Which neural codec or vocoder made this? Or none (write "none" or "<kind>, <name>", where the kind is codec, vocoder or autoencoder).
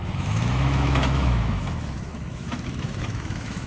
autoencoder, DAC-VAE